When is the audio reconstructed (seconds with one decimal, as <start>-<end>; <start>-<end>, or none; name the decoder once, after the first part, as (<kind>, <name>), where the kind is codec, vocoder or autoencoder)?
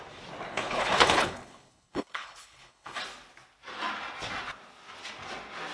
0.5-3.0 (codec, HILCodec)